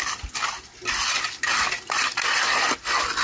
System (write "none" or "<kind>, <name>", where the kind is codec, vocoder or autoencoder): none